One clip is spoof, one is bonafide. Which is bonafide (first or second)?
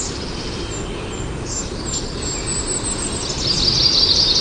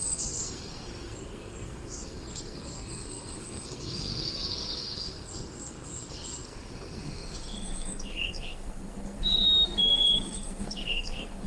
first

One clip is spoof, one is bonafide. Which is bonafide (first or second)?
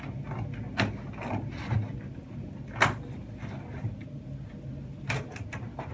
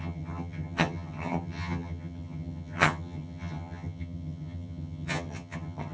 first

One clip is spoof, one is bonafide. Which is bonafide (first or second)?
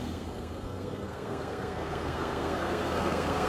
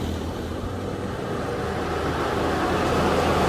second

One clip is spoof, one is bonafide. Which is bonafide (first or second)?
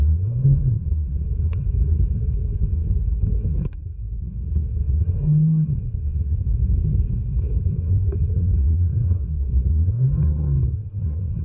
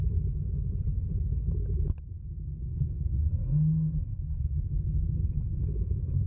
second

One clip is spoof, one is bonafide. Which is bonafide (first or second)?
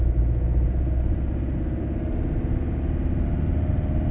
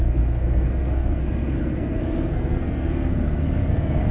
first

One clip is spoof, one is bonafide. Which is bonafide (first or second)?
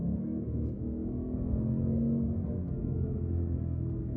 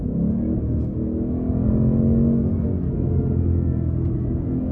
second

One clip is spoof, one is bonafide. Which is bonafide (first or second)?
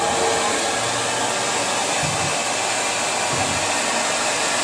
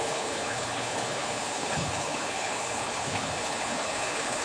first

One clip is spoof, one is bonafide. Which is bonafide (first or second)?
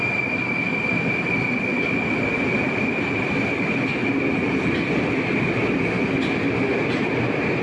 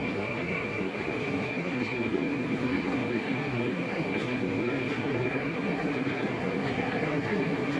first